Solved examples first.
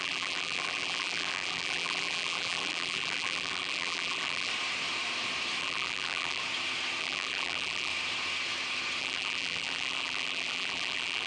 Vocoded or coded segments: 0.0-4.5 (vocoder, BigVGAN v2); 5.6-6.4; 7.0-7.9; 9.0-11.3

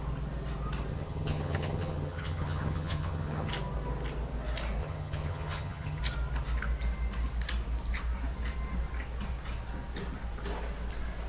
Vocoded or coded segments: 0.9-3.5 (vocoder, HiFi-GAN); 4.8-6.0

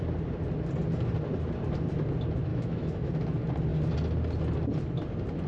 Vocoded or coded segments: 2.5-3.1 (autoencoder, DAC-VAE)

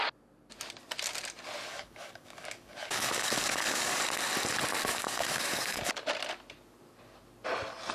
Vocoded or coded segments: 1.7-4.0 (codec, DAC); 4.9-5.9

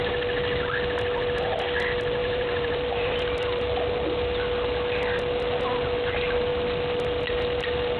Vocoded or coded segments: 2.2-3.2 (vocoder, BigVGAN v2)

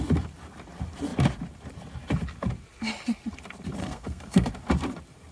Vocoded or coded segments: 3.8-4.5 (codec, SNAC)

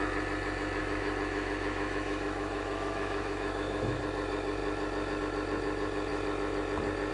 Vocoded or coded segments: 0.8-4.0 (autoencoder, DAC-VAE)